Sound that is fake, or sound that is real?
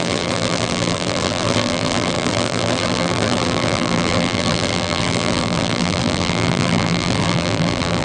fake